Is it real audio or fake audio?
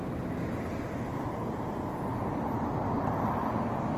real